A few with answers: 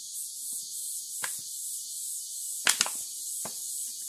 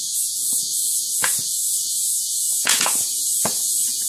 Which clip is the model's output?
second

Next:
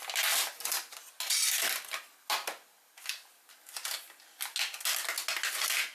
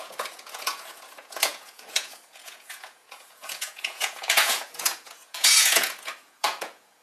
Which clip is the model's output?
second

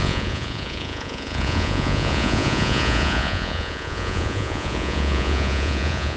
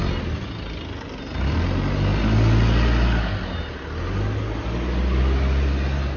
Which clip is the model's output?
first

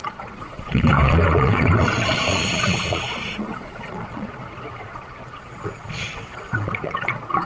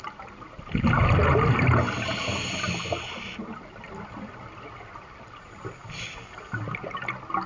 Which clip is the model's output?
first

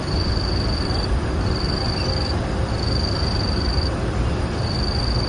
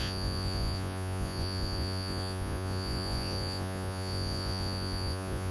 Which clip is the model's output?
second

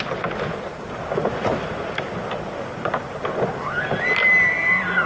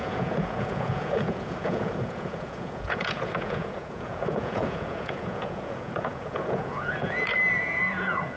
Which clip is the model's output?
second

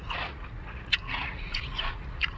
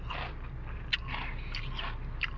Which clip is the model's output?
first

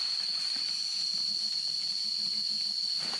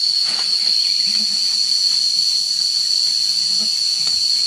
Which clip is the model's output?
second